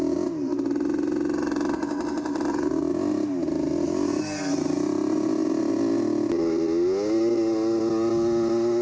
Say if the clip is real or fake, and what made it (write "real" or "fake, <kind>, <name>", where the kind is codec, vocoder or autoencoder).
real